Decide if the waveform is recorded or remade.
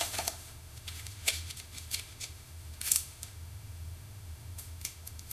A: remade